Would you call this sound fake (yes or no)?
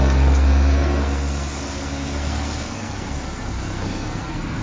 yes